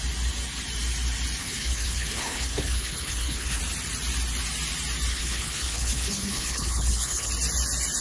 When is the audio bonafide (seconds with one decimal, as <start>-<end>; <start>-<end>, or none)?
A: 0.0-1.4; 3.6-5.1; 7.3-8.0

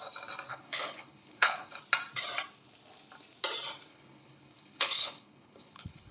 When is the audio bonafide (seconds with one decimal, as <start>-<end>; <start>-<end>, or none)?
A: 0.0-0.5; 1.8-3.9

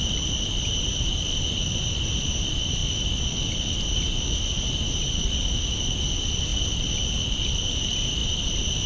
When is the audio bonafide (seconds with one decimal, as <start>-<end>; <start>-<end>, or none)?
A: 0.0-8.9

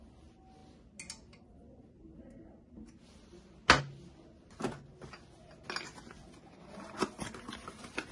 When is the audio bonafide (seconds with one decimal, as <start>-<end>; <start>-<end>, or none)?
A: 0.0-8.1